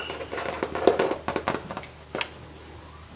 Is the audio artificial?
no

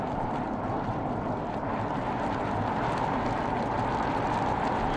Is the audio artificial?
yes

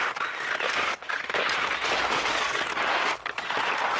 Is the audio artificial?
no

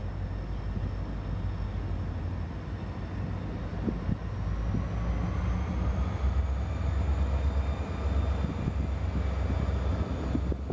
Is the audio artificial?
no